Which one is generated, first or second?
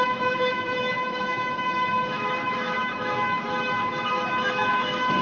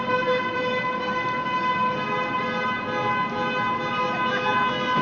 first